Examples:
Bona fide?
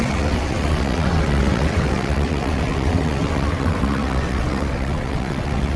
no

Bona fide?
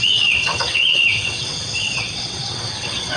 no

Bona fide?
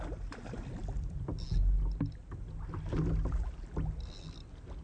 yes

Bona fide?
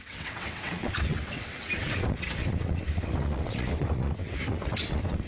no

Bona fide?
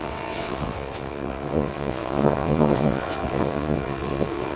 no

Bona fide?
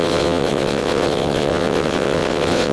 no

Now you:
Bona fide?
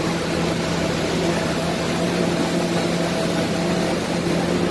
yes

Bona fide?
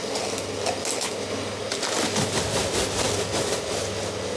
yes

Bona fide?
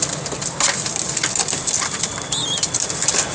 yes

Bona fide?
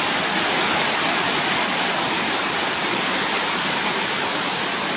yes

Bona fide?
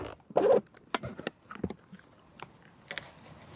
yes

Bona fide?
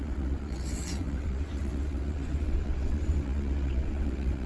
no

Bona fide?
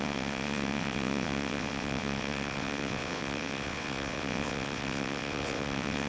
no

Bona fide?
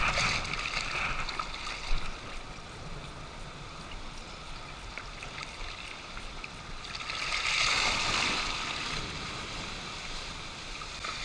yes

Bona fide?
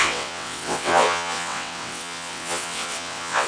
no